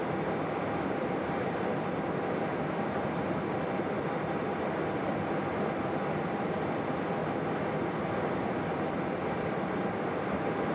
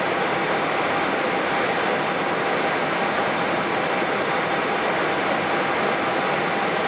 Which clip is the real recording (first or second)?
second